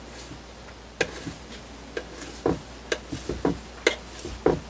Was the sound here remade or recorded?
recorded